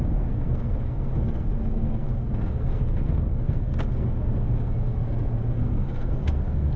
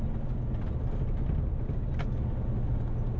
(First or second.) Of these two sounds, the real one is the second